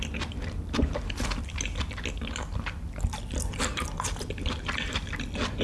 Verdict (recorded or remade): recorded